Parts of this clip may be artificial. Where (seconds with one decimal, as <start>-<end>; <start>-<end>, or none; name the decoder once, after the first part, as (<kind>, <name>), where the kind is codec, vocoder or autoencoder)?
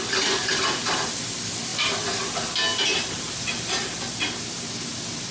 1.7-2.2 (vocoder, BigVGAN v2); 2.7-3.9